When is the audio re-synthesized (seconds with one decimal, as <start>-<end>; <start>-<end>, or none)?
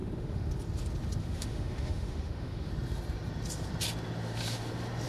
0.0-0.5; 1.2-2.7